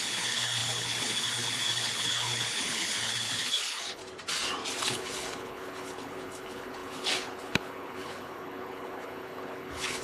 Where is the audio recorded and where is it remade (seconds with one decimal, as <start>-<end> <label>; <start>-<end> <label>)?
0.0-4.0 remade; 4.0-4.8 recorded; 4.8-10.0 remade